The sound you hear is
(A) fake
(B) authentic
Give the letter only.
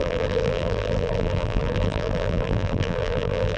A